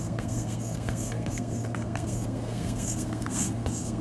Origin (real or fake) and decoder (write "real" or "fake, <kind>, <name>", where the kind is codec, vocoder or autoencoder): fake, codec, SNAC